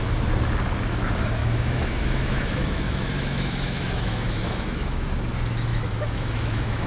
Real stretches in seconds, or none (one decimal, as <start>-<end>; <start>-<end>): 0.0-1.4; 5.1-5.7